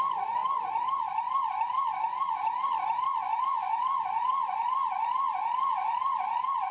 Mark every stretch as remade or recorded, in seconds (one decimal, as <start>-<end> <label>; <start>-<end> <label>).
0.0-6.7 recorded